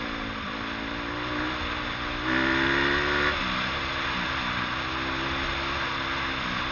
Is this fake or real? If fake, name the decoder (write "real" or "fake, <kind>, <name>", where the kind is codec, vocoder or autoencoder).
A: real